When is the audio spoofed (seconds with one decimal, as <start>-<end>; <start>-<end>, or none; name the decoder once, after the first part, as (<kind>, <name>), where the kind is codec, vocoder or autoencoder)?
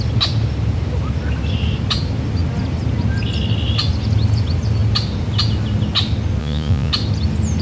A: 6.4-6.9 (vocoder, Vocos)